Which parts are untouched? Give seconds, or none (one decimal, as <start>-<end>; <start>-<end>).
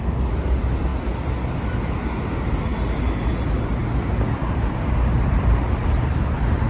0.0-4.4